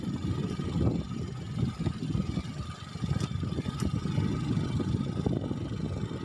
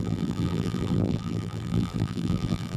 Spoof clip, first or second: second